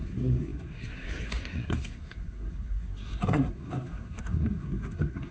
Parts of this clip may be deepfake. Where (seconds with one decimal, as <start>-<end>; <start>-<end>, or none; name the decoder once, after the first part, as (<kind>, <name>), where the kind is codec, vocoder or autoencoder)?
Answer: 0.0-5.3 (codec, SNAC)

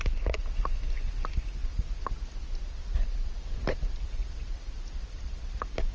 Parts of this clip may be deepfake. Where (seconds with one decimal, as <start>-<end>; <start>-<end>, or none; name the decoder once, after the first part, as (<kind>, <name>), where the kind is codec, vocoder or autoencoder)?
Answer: none

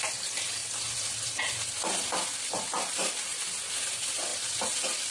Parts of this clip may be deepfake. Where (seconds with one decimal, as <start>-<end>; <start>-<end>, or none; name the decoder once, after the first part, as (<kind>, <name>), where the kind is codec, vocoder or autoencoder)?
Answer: none

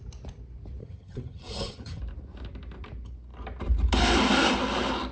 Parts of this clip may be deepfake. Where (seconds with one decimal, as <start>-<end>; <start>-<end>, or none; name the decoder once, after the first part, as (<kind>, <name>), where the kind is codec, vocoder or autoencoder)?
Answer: 0.8-2.0 (vocoder, HiFi-GAN)

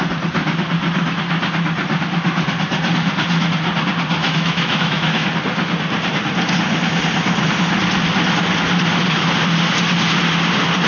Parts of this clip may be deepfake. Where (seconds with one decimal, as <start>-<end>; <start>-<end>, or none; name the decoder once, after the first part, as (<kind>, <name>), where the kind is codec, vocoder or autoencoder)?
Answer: 4.2-5.3 (autoencoder, DAC-VAE)